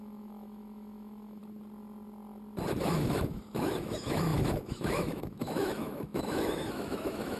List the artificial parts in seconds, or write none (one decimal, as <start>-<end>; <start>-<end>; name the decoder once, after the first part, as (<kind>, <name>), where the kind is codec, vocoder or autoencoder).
0.0-1.4 (autoencoder, DAC-VAE); 2.8-7.4